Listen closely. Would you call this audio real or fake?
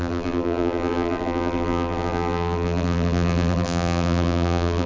fake